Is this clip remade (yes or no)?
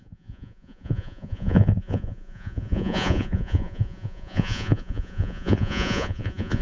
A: yes